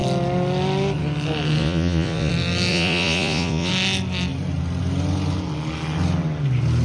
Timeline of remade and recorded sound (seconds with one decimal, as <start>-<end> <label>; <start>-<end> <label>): 0.0-1.6 recorded; 1.6-2.3 remade; 2.3-2.7 recorded; 2.7-3.7 remade; 3.7-6.8 recorded